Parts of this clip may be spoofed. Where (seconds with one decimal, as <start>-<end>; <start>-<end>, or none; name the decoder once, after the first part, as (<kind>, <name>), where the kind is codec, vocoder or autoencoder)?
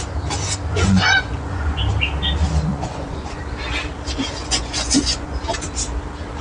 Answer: 0.7-1.8 (vocoder, Vocos); 2.7-3.4; 4.4-5.4